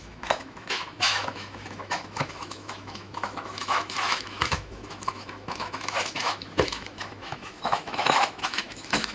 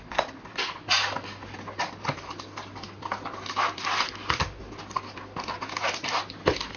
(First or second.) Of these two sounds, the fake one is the first